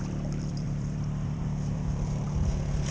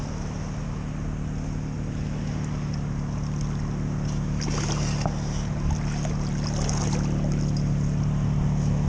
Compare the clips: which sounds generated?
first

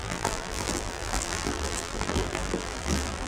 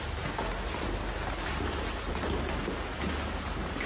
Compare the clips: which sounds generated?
first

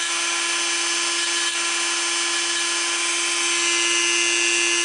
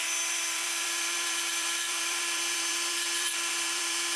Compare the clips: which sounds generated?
second